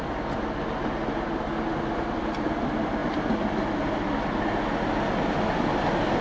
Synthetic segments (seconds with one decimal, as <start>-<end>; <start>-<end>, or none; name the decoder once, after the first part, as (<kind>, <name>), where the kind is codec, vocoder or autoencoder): none